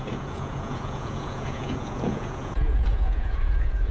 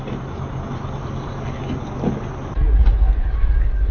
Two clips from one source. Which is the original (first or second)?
second